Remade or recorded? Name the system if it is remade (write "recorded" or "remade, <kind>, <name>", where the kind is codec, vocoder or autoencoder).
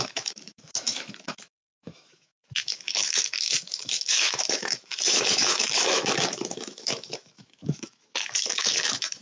remade, autoencoder, DAC-VAE